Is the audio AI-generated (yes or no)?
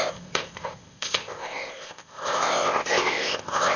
yes